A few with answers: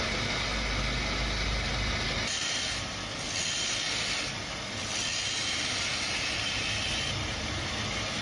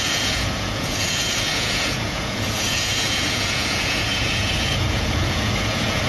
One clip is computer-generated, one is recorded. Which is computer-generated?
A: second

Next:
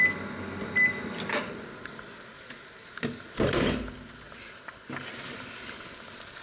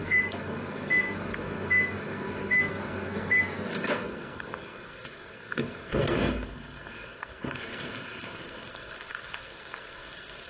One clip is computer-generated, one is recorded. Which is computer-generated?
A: second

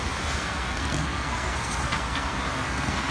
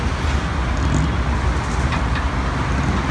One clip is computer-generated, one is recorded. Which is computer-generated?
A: first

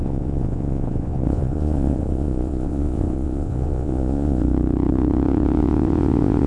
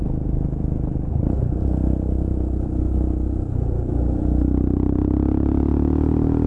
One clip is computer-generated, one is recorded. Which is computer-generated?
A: first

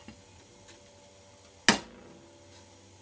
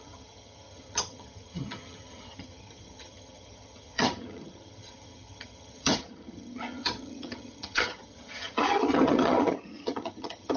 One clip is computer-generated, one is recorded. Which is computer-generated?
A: second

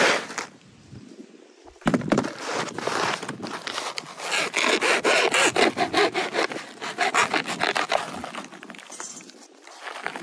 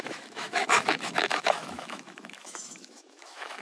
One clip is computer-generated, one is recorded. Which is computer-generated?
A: second